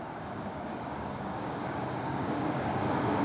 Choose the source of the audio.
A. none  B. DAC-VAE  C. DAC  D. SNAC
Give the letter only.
C